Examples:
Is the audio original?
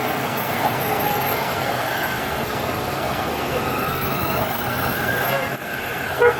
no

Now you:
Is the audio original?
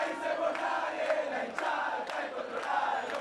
yes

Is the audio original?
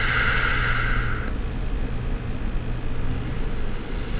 yes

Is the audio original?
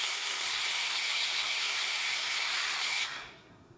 no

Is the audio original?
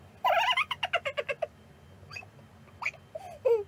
yes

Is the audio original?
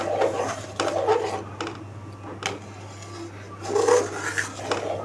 yes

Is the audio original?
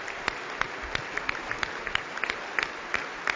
yes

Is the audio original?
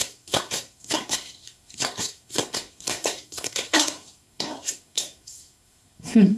no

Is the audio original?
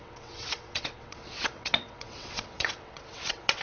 no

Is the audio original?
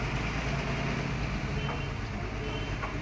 yes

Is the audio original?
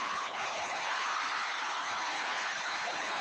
no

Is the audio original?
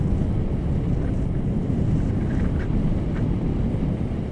yes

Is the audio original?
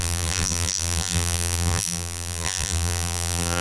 no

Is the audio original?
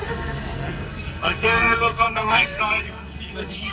no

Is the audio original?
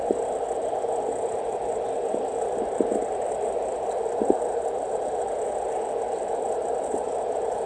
yes